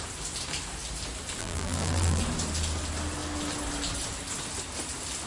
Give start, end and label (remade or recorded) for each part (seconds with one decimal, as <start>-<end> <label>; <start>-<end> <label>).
0.0-1.4 recorded; 1.4-2.2 remade; 2.2-5.3 recorded